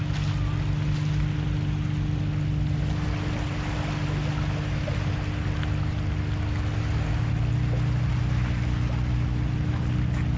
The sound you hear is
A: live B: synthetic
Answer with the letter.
A